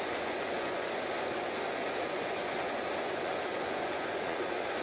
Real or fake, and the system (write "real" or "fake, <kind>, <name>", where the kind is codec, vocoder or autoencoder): fake, vocoder, Vocos